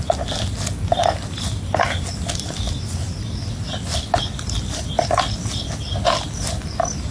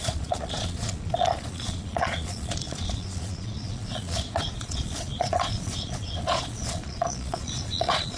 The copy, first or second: second